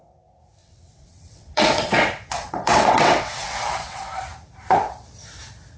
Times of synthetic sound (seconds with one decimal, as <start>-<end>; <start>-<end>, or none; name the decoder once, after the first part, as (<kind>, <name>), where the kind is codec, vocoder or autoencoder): 0.6-4.1 (vocoder, WaveNeXt)